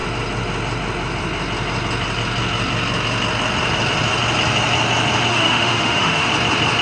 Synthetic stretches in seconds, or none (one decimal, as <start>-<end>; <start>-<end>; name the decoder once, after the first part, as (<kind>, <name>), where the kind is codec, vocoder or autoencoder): 5.3-6.3 (autoencoder, DAC-VAE)